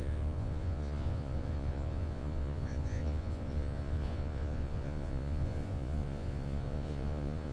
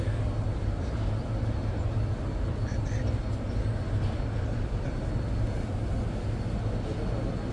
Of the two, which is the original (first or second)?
second